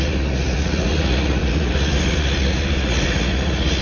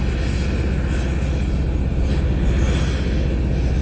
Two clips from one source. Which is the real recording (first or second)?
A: second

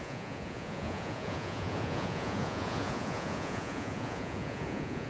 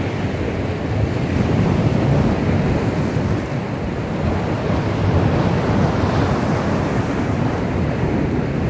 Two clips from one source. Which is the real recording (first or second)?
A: second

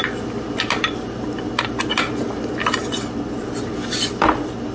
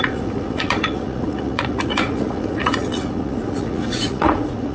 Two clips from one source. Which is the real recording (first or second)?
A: first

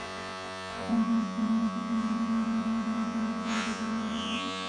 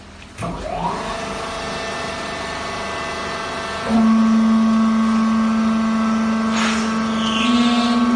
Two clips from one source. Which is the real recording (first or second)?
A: second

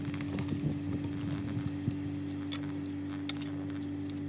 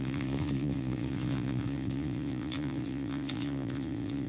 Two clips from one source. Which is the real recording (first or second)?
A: first